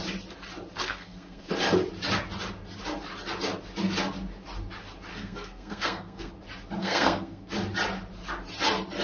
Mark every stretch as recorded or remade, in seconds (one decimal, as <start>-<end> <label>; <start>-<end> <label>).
0.0-0.8 recorded; 0.8-1.5 remade; 1.5-5.1 recorded; 5.1-6.3 remade; 6.3-6.8 recorded; 6.8-7.5 remade; 7.5-9.0 recorded